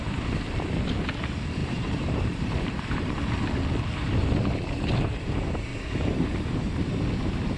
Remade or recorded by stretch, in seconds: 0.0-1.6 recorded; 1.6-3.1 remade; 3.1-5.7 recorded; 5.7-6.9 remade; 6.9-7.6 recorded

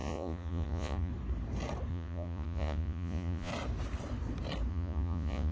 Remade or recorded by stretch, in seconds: 0.0-1.1 remade; 1.1-1.9 recorded; 1.9-3.5 remade; 3.5-4.7 recorded; 4.7-5.5 remade